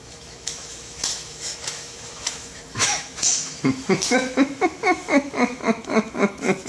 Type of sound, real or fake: fake